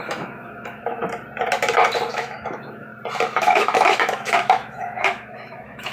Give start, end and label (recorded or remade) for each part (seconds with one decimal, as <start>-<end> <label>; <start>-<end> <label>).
0.0-1.0 remade; 1.0-2.1 recorded; 2.1-2.9 remade; 2.9-3.4 recorded; 3.4-5.9 remade